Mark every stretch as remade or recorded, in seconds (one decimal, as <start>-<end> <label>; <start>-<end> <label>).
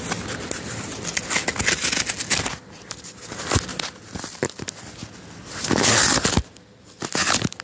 0.0-3.7 recorded; 3.7-4.6 remade; 4.6-7.6 recorded